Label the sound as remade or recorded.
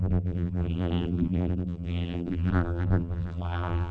remade